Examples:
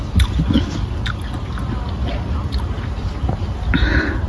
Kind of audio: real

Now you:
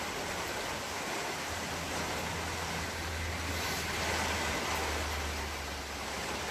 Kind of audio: real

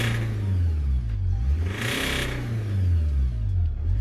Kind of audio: real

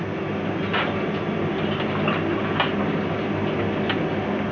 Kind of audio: real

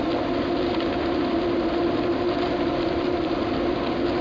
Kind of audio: real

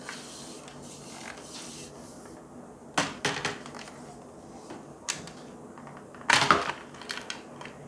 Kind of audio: real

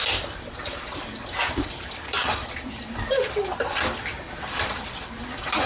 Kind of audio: fake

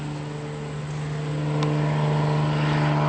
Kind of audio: real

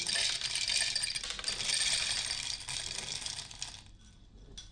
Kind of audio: real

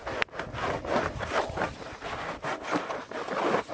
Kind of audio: real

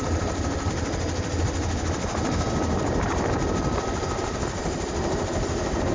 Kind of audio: real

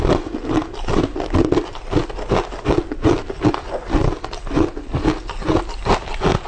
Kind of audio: real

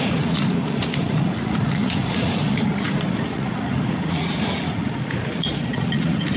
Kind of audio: fake